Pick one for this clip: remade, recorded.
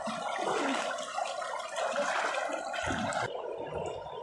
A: recorded